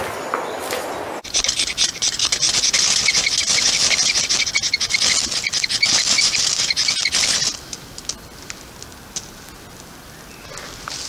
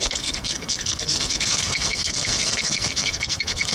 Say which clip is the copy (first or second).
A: second